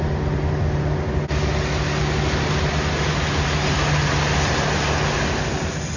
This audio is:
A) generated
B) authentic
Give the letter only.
B